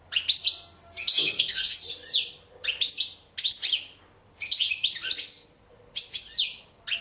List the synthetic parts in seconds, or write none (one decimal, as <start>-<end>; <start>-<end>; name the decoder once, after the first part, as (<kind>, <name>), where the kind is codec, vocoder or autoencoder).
1.1-1.9 (codec, SNAC)